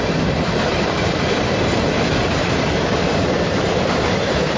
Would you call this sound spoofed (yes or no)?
yes